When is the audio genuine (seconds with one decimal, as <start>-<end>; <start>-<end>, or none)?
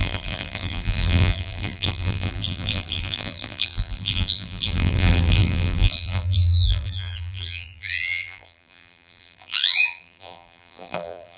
none